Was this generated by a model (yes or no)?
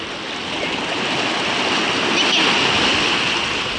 no